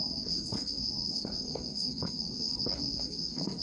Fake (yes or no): yes